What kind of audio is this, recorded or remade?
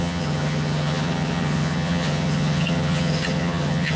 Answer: remade